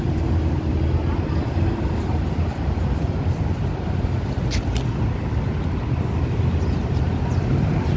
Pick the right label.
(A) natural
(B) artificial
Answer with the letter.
A